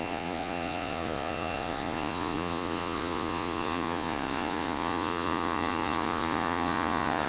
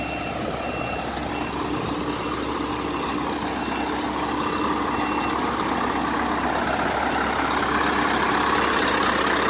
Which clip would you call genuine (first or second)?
second